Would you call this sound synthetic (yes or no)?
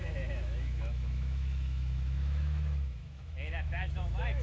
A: yes